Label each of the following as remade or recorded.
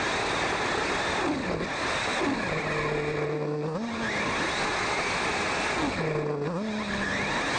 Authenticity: recorded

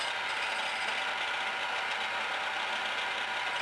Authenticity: recorded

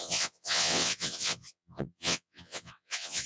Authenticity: remade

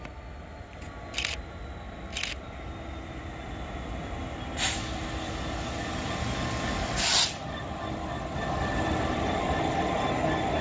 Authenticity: recorded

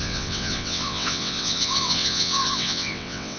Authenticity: remade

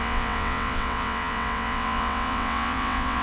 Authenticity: remade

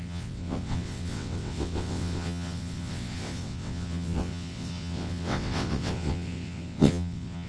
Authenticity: remade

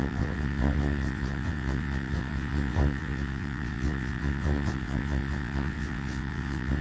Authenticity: remade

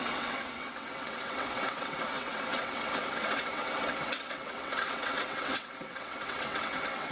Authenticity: remade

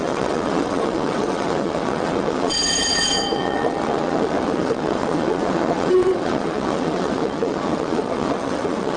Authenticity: remade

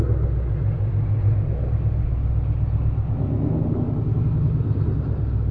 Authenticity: recorded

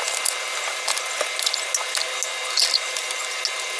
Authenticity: recorded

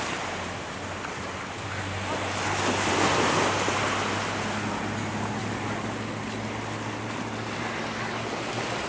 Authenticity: recorded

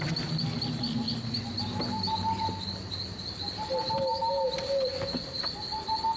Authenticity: recorded